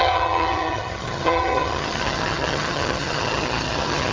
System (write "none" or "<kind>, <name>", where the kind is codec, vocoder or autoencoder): vocoder, HiFi-GAN